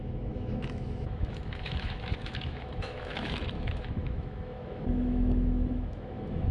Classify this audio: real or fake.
fake